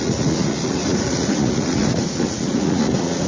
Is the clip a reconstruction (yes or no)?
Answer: yes